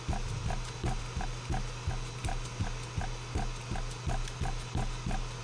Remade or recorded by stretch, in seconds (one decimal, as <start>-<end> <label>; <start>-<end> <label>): 0.0-5.4 recorded